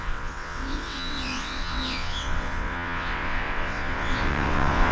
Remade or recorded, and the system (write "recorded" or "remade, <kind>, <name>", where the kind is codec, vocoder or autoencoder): remade, vocoder, WaveNeXt